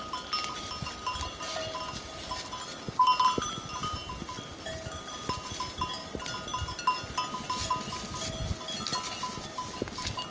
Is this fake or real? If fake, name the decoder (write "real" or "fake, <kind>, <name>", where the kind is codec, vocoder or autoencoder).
real